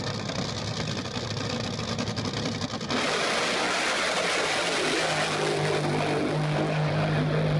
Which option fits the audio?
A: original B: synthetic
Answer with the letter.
A